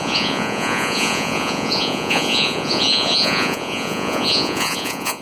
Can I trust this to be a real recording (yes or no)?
no